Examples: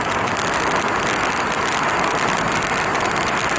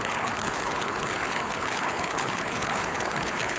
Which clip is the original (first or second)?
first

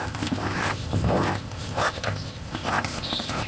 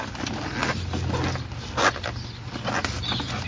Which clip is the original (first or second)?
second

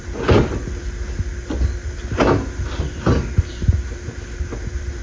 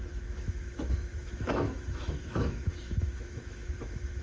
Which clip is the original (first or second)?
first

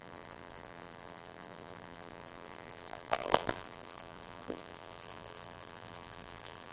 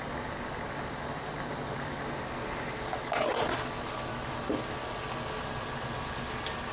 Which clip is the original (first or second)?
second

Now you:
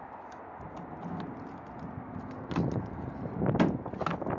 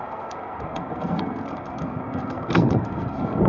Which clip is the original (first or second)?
first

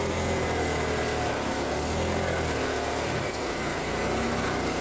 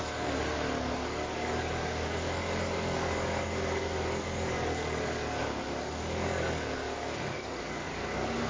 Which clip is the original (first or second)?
first